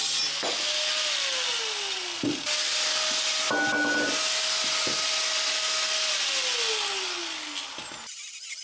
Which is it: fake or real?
real